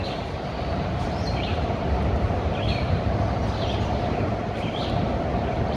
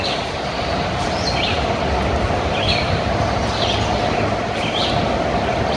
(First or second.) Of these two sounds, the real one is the second